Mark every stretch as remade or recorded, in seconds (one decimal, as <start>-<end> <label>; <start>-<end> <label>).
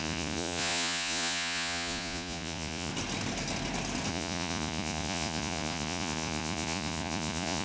0.0-2.9 remade; 2.9-4.1 recorded; 4.1-7.6 remade